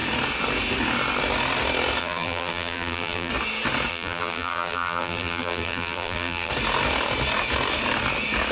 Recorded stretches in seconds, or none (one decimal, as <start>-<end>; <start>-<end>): 0.0-2.0; 3.3-3.9; 6.5-8.5